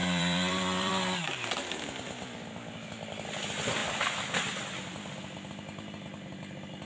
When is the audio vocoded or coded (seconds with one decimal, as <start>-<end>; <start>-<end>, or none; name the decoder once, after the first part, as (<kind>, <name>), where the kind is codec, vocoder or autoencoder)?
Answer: 0.0-0.9 (vocoder, BigVGAN v2)